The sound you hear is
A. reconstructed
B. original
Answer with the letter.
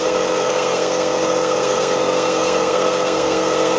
A